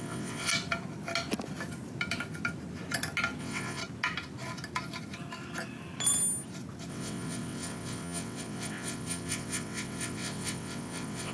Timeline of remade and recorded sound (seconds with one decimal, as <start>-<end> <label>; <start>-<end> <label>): 0.0-0.5 remade; 0.5-3.4 recorded; 3.4-3.8 remade; 3.8-6.9 recorded; 6.9-11.3 remade